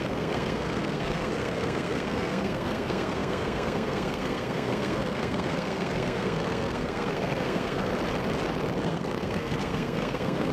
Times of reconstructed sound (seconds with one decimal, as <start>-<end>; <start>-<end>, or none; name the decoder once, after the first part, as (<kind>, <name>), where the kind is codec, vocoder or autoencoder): 0.0-7.9 (codec, SNAC); 8.8-10.5